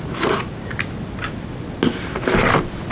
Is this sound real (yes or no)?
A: yes